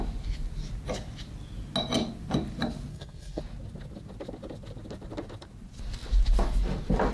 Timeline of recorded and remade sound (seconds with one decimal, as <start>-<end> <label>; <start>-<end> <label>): 0.0-2.9 recorded; 2.9-3.4 remade; 3.4-7.1 recorded